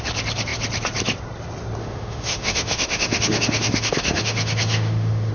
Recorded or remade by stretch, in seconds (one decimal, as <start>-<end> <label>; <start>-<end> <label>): 0.0-1.8 recorded; 1.8-5.3 remade